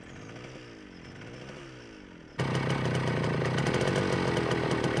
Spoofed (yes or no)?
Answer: no